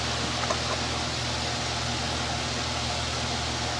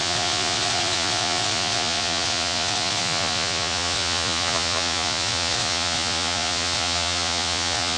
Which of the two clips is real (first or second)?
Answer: first